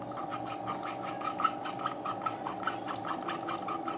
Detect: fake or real real